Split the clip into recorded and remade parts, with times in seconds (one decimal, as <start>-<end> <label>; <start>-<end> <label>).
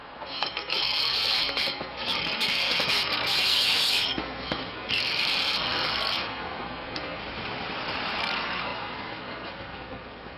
0.0-7.2 remade; 7.2-8.2 recorded; 8.2-10.4 remade